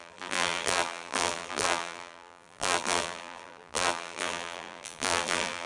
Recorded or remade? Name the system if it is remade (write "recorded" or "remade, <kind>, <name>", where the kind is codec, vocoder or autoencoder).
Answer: remade, vocoder, BigVGAN v2